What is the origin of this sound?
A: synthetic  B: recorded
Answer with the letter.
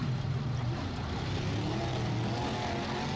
B